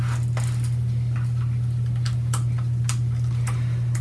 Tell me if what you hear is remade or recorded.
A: recorded